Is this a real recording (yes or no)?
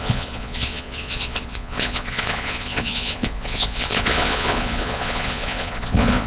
no